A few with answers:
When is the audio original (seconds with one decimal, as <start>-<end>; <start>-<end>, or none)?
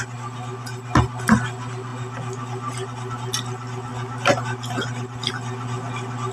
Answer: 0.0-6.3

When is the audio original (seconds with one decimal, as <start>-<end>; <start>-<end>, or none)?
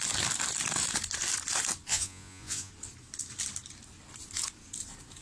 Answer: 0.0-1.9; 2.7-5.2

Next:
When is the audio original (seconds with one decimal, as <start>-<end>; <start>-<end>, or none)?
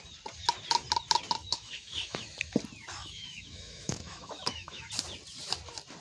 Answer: 0.0-1.4; 2.2-3.0; 4.9-6.0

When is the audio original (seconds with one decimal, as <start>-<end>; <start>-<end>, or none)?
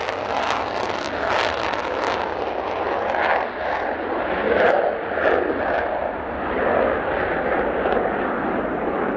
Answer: 0.0-9.2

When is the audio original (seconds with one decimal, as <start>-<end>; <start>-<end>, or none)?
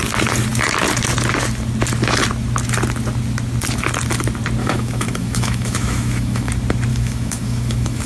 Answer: 0.0-4.6; 6.5-6.9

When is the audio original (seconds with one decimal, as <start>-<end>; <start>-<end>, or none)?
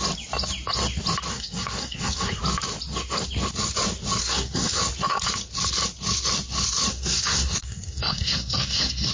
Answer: 0.0-1.3; 2.4-4.2; 4.8-6.9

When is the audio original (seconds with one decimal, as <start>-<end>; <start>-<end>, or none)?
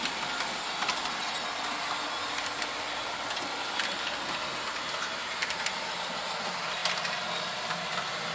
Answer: 0.0-8.3